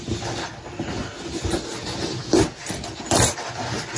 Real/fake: real